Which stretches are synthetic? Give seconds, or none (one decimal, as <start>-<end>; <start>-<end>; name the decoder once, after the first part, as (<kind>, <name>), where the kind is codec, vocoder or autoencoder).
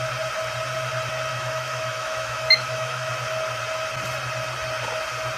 1.3-3.1 (autoencoder, DAC-VAE)